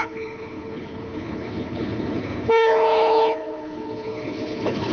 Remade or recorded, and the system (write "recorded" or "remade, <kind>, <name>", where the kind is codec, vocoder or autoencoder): remade, codec, HILCodec